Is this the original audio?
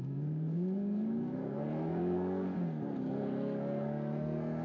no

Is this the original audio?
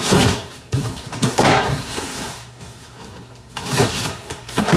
no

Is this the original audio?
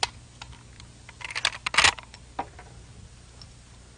yes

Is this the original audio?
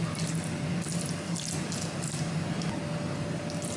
yes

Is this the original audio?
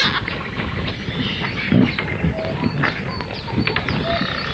yes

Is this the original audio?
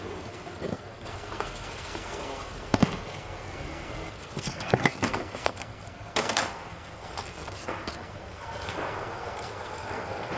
no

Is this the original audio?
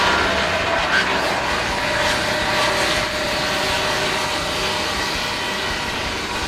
yes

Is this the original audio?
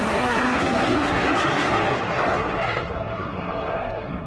no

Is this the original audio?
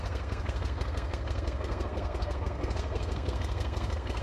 no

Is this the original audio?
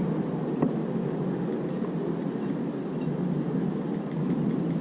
yes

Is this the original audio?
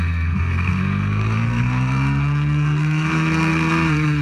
no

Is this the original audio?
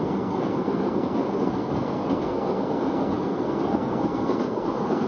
no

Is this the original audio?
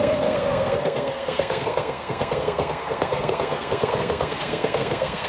no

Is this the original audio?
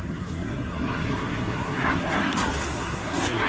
no